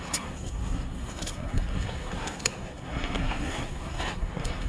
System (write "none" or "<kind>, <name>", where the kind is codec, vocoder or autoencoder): codec, SNAC